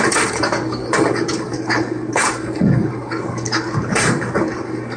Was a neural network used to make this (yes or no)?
yes